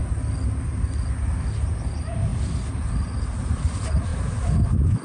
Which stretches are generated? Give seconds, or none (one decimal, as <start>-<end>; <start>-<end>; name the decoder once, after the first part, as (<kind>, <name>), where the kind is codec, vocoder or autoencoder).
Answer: none